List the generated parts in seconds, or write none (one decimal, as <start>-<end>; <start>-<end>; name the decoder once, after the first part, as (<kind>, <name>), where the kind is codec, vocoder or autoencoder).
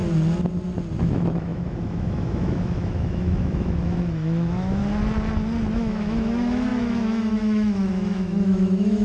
1.0-4.8 (autoencoder, DAC-VAE); 5.7-9.0